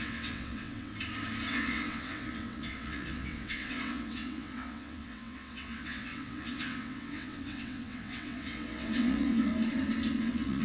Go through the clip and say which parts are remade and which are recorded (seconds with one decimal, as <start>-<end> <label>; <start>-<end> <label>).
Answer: 0.0-0.9 remade; 0.9-1.5 recorded; 1.5-9.5 remade; 9.5-10.2 recorded; 10.2-10.6 remade